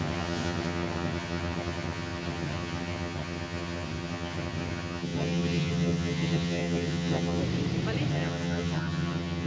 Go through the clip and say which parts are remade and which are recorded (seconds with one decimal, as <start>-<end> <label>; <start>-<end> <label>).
0.0-7.4 remade; 7.4-8.1 recorded; 8.1-9.5 remade